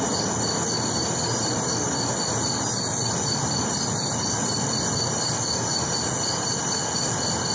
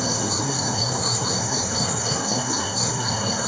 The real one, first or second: first